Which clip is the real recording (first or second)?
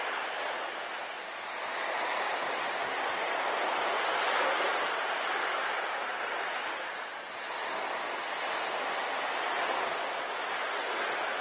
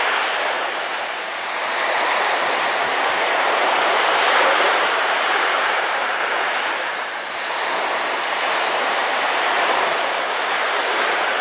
first